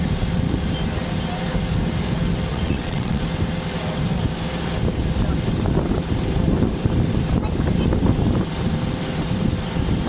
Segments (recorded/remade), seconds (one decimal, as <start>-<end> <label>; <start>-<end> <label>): 0.0-2.5 recorded; 2.5-3.2 remade; 3.2-10.1 recorded